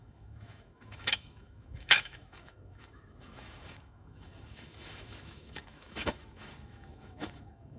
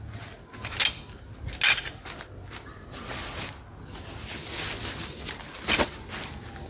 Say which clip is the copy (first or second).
first